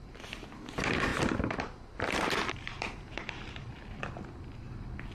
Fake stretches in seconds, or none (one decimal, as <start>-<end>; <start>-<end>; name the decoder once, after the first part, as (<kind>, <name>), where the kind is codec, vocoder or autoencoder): 1.1-3.7 (vocoder, BigVGAN v2)